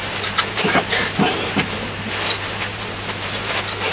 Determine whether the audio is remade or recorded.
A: remade